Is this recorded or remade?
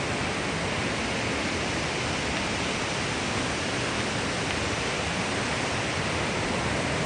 recorded